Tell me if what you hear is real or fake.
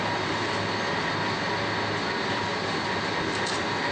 real